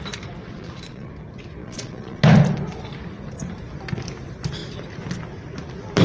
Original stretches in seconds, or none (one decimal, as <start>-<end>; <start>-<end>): 0.0-0.4; 1.1-1.6; 2.2-6.0